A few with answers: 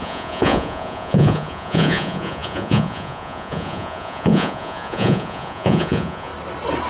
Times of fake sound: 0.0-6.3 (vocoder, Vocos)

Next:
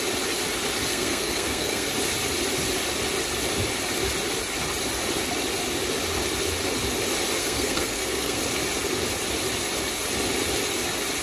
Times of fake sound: 0.9-1.9 (codec, SNAC); 7.4-8.4

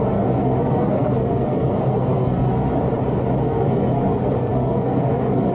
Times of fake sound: 0.0-2.7 (codec, SNAC); 3.4-5.5

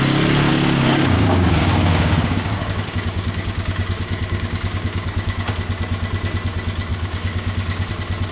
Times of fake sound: 0.5-5.5 (codec, DAC); 6.9-7.9

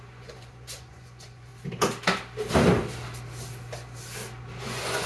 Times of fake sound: 0.0-1.5 (vocoder, Vocos); 4.6-5.1

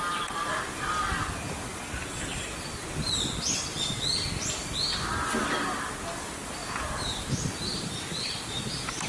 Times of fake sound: none

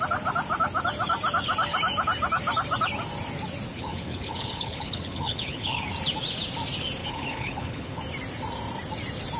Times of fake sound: 3.7-5.9 (codec, HILCodec); 7.0-8.0